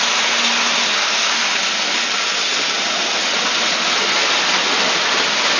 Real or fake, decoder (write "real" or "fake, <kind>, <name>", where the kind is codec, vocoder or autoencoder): real